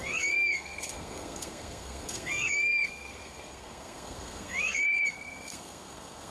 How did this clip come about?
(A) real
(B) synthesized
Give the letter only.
B